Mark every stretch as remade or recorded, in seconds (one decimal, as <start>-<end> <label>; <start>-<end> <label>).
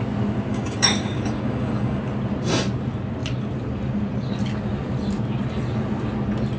0.0-0.5 recorded; 0.5-2.0 remade; 2.0-6.6 recorded